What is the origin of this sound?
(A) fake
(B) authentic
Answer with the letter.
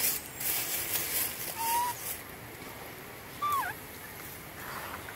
B